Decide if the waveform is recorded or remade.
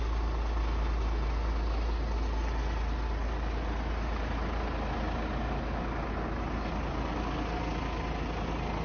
recorded